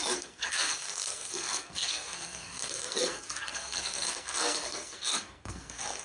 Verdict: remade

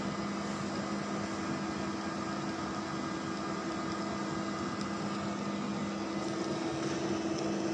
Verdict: recorded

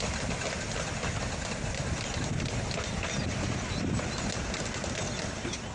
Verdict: recorded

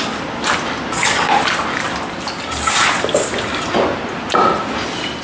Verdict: recorded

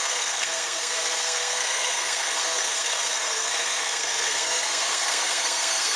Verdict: remade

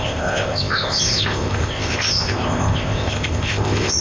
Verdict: remade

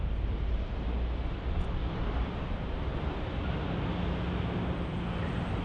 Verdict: recorded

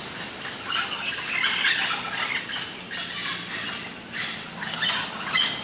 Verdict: recorded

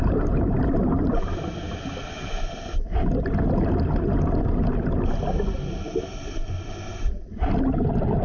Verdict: recorded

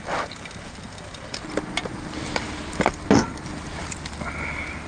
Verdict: recorded